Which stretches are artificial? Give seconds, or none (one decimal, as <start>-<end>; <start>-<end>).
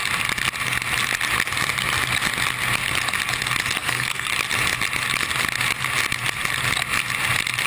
3.8-4.3